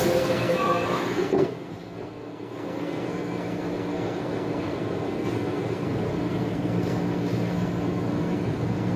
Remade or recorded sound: remade